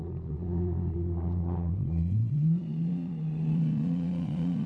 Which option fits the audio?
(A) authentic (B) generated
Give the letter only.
B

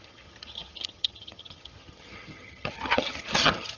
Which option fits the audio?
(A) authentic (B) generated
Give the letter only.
B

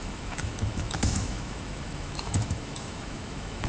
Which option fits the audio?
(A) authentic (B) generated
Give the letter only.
B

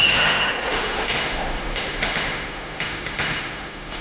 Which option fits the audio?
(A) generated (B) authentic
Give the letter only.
A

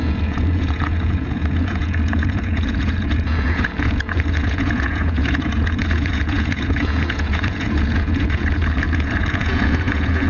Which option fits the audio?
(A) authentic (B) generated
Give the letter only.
B